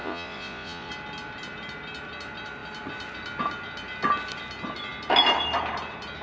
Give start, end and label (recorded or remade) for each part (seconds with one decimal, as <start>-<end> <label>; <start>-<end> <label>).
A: 0.0-0.9 remade; 0.9-6.2 recorded